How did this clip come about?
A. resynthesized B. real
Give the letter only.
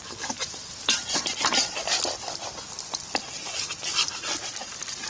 B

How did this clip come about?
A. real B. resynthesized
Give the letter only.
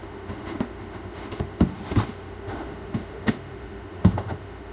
B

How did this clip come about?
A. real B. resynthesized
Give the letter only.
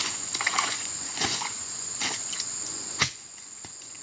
B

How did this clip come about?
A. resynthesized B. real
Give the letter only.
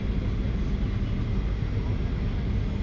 B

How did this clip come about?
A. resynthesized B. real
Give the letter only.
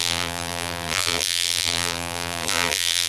A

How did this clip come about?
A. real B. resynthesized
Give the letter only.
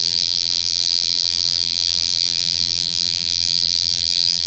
B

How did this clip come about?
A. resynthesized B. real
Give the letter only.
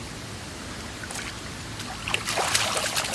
B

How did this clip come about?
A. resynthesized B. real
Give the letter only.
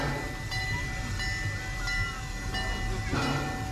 B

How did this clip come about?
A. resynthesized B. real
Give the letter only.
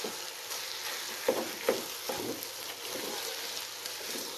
B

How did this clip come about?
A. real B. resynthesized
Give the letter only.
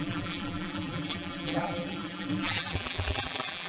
B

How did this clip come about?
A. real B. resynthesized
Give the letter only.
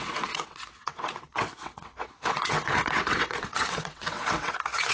B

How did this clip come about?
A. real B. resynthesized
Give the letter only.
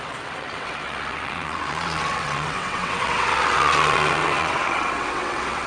B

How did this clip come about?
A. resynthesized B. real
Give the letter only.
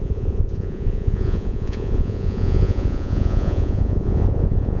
A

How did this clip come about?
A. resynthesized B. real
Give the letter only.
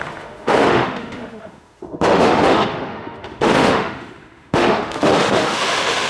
A